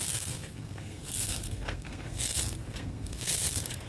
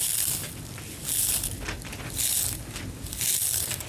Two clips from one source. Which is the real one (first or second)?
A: second